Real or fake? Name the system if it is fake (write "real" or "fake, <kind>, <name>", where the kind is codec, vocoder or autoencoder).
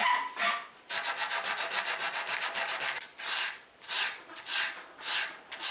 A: real